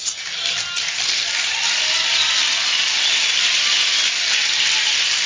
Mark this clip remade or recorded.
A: recorded